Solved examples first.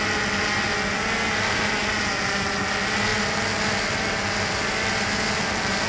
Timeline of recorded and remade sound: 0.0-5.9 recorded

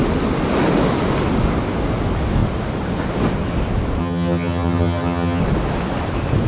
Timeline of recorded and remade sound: 0.0-4.0 recorded; 4.0-5.4 remade; 5.4-6.5 recorded

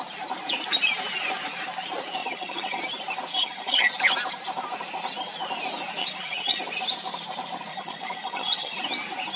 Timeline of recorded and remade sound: 0.0-2.2 recorded; 2.2-2.8 remade; 2.8-3.3 recorded; 3.3-3.9 remade; 3.9-6.0 recorded; 6.0-6.6 remade; 6.6-7.7 recorded; 7.7-8.8 remade; 8.8-9.4 recorded